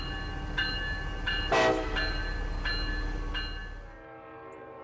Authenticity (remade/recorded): recorded